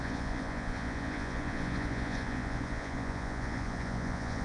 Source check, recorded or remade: remade